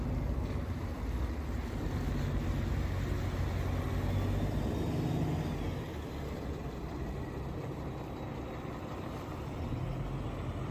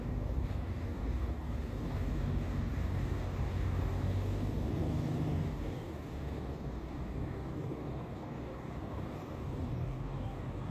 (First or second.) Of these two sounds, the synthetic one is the second